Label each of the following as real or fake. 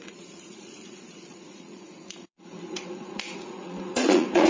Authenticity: fake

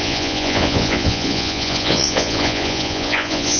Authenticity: fake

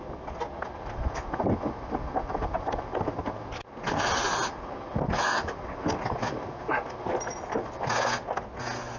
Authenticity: real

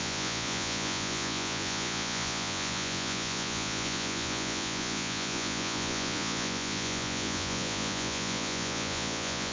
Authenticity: fake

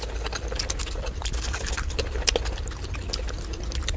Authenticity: real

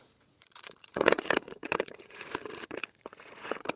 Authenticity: fake